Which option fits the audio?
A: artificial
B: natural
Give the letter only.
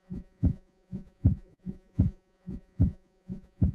A